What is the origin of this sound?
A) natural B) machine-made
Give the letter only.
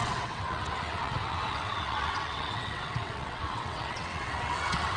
B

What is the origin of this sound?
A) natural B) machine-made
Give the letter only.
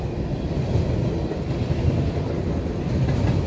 A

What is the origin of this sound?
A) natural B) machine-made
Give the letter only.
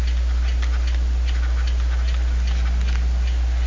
A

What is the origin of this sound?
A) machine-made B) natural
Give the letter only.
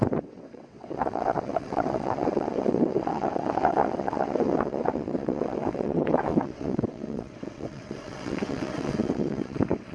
A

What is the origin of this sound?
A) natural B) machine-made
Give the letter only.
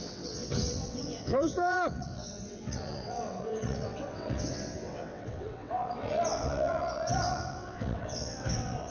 B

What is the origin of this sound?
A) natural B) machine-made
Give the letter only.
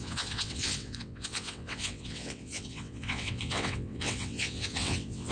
B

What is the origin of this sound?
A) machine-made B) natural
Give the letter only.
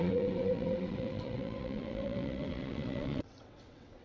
A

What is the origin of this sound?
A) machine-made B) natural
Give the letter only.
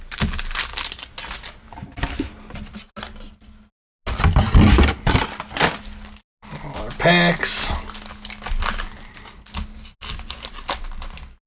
B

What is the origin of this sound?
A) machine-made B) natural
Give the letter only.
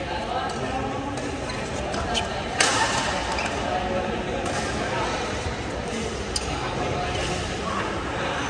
B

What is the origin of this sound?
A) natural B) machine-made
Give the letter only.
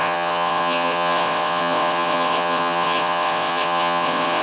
B